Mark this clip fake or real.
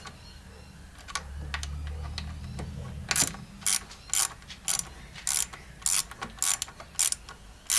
real